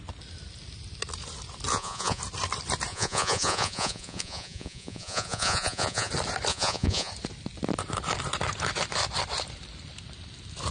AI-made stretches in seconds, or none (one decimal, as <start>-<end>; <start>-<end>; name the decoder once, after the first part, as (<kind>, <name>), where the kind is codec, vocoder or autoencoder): 1.7-2.2 (vocoder, Vocos); 2.9-6.1; 6.5-7.1